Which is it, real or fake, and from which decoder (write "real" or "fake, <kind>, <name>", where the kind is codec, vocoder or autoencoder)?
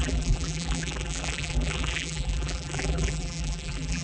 fake, vocoder, BigVGAN v2